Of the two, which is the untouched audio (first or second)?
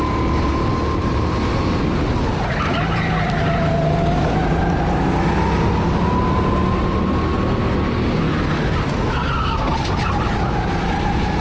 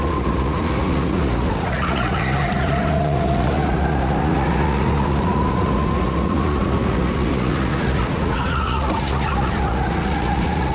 first